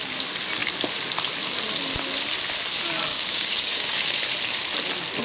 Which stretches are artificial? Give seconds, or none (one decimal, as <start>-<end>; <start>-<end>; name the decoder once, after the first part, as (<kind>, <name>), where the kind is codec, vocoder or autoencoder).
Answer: 3.1-4.1 (codec, DAC)